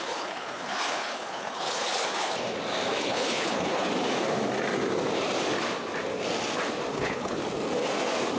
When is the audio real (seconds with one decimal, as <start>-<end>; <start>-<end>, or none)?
2.3-3.0; 3.9-6.9; 7.4-8.4